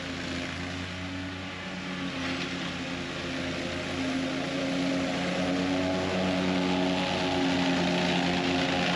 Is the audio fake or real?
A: real